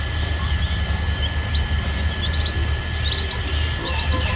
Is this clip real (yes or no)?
yes